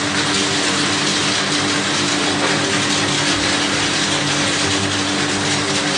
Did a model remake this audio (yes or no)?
no